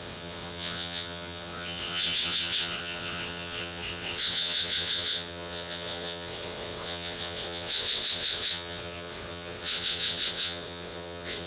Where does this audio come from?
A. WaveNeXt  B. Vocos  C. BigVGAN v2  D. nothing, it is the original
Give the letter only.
A